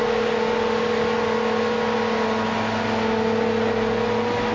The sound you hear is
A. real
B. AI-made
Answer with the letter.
A